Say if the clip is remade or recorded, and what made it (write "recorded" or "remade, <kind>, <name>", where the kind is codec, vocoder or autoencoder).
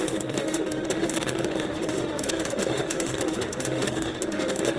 remade, autoencoder, DAC-VAE